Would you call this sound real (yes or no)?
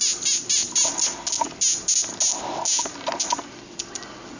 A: yes